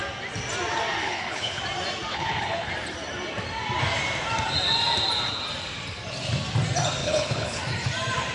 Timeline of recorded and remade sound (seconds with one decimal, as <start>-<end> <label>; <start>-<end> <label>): 0.0-1.0 recorded; 1.0-1.6 remade; 1.6-2.1 recorded; 2.1-2.7 remade; 2.7-7.0 recorded; 7.0-7.6 remade; 7.6-8.3 recorded